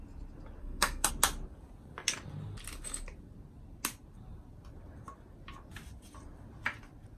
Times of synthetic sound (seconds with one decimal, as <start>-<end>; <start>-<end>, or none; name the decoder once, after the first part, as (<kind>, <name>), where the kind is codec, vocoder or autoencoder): 0.6-1.1 (codec, SNAC)